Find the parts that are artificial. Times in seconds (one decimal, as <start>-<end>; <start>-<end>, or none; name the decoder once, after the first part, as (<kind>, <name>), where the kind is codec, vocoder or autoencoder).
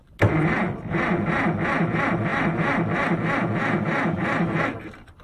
0.0-1.1 (vocoder, BigVGAN v2); 4.2-4.8